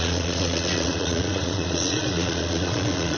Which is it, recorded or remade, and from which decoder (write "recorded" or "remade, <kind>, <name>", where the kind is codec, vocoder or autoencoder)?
remade, vocoder, Vocos